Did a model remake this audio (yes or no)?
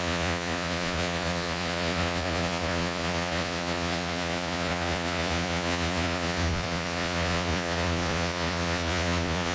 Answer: yes